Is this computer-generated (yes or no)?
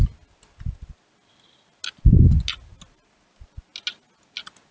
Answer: no